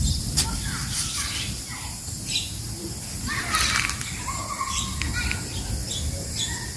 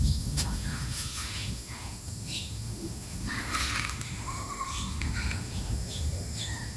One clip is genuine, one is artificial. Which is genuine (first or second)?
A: first